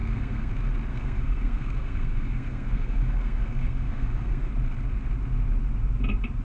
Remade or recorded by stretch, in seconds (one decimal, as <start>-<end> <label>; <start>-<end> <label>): 0.0-0.5 remade; 0.5-0.9 recorded; 0.9-4.5 remade; 4.5-6.4 recorded